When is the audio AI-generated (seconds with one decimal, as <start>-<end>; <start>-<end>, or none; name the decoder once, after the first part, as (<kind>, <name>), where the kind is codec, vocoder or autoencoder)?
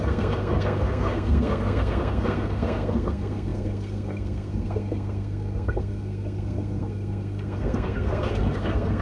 0.0-9.0 (codec, SNAC)